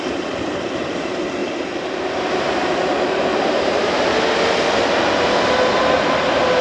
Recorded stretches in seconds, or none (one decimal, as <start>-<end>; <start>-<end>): 0.0-1.4; 4.0-6.6